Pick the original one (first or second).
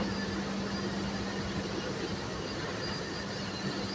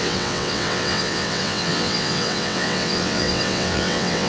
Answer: first